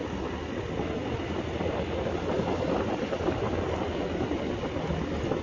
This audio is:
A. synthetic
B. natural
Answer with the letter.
B